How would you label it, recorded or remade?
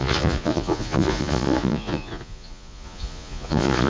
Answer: remade